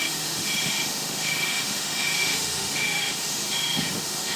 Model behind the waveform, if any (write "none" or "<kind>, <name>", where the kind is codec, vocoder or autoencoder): autoencoder, DAC-VAE